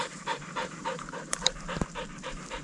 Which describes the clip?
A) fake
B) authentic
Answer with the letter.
A